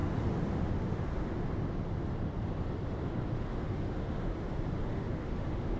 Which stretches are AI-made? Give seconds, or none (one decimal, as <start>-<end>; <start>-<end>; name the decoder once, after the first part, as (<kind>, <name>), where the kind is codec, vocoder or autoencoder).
0.7-1.1 (autoencoder, DAC-VAE); 3.5-4.3; 4.8-5.8